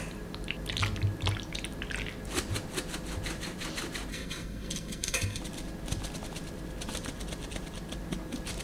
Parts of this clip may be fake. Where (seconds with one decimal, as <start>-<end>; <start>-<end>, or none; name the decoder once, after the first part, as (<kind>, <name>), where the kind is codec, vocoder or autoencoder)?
4.1-5.4 (codec, SNAC)